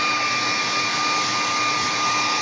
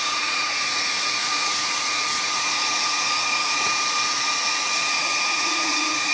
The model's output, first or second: second